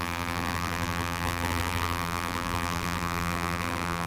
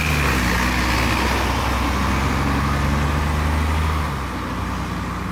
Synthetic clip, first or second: first